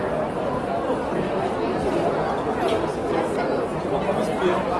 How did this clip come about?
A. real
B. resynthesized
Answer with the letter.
A